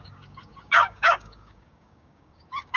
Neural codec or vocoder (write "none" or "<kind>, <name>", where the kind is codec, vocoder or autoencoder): codec, DAC